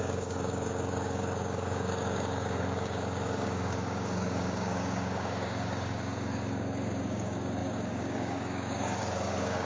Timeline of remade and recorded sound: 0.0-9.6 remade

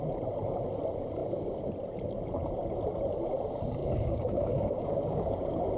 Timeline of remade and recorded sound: 0.0-3.8 recorded; 3.8-5.3 remade; 5.3-5.8 recorded

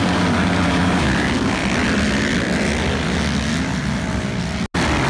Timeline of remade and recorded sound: 0.0-1.6 remade; 1.6-5.1 recorded

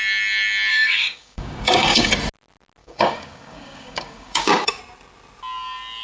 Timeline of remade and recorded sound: 0.0-0.7 recorded; 0.7-2.1 remade; 2.1-2.8 recorded; 2.8-4.8 remade; 4.8-6.0 recorded

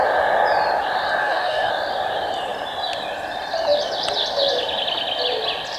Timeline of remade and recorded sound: 0.0-1.2 recorded; 1.2-1.7 remade; 1.7-5.8 recorded

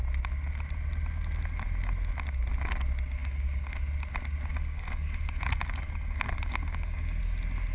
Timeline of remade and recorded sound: 0.0-3.2 recorded; 3.2-3.8 remade; 3.8-4.5 recorded; 4.5-7.2 remade; 7.2-7.7 recorded

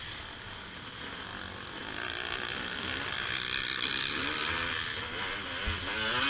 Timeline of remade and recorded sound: 0.0-6.3 recorded

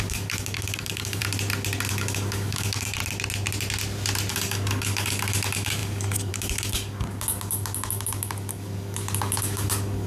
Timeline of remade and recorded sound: 0.0-1.2 remade; 1.2-1.9 recorded; 1.9-3.0 remade; 3.0-4.3 recorded; 4.3-10.1 remade